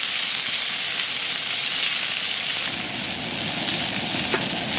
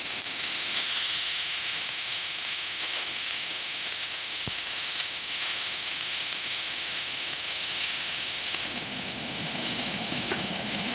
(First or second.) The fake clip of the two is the second